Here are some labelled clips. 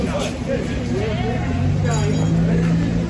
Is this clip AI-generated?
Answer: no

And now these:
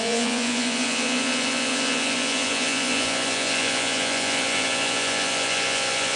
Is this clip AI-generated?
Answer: yes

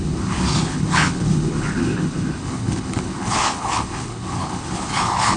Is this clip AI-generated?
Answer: yes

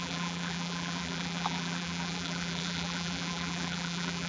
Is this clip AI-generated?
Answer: yes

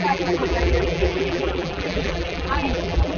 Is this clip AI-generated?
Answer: yes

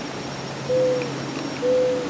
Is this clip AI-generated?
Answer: no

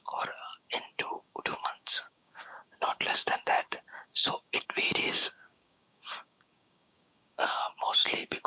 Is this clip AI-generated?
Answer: yes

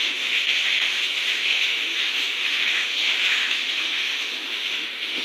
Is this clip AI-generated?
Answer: yes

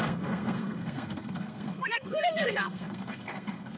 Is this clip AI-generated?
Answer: yes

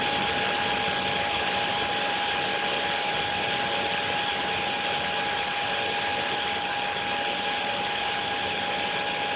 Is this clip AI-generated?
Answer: no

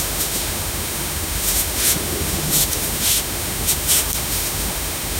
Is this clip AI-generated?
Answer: yes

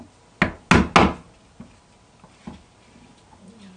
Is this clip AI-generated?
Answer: no